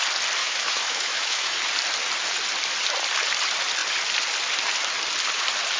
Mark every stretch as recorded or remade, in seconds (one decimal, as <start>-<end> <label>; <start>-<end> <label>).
0.0-0.4 recorded; 0.4-1.6 remade; 1.6-5.8 recorded